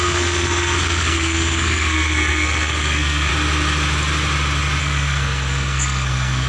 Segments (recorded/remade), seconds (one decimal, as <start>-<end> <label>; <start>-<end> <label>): 0.0-3.3 remade; 3.3-4.8 recorded; 4.8-6.5 remade